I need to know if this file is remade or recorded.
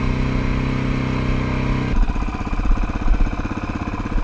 recorded